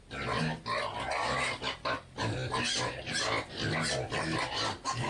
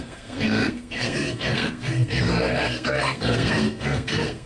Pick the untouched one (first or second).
first